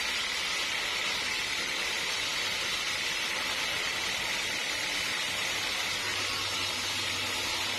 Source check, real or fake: real